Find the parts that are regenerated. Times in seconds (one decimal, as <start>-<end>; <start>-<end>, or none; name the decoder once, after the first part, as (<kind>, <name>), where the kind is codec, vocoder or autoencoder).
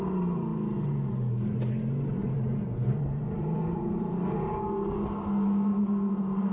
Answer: 2.2-4.1 (vocoder, BigVGAN v2)